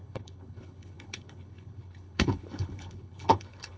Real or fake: fake